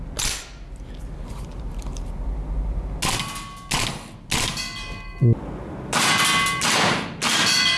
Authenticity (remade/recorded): recorded